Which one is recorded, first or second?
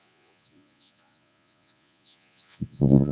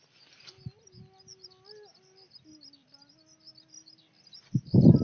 second